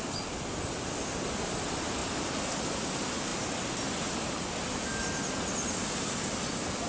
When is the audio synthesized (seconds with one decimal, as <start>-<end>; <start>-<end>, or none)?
none